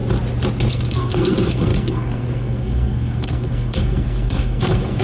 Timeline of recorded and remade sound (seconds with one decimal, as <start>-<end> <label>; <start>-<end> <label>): 0.0-0.7 recorded; 0.7-5.0 remade